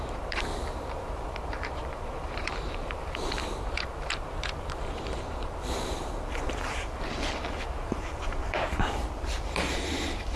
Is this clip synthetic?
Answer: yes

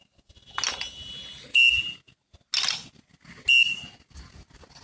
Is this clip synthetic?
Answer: no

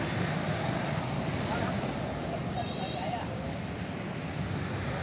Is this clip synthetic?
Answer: yes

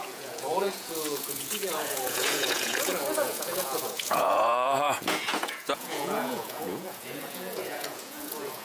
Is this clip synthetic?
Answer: yes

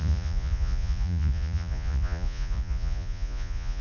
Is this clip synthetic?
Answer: yes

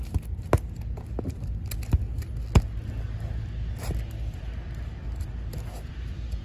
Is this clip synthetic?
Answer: no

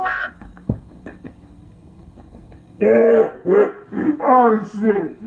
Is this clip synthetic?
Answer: yes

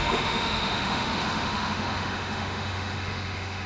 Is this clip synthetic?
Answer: yes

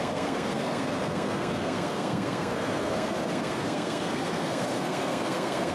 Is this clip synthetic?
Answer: yes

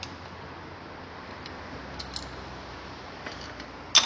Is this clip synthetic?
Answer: no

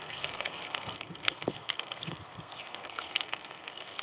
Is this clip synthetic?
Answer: yes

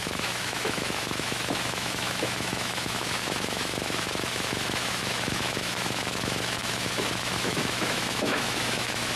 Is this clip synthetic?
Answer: yes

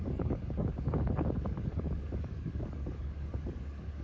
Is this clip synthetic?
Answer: yes